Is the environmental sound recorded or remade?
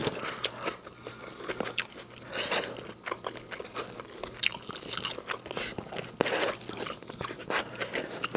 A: recorded